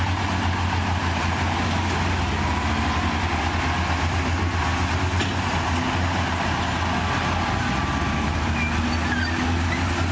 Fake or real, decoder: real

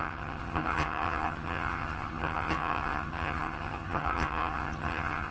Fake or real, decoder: fake, vocoder, HiFi-GAN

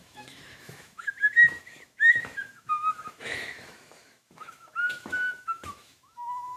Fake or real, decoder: fake, autoencoder, DAC-VAE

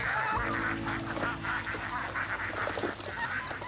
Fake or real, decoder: real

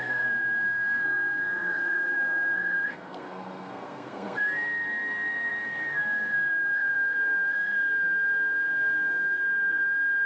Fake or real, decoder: fake, codec, SNAC